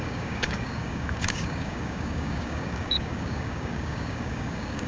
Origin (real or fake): fake